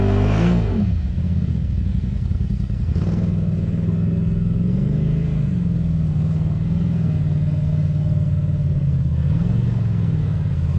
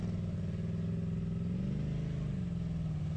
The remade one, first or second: first